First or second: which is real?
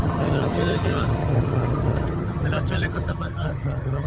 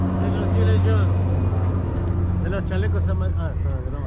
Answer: second